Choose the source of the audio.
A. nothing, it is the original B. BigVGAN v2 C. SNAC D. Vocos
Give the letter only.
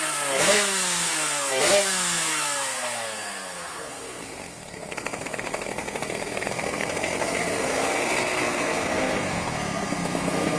C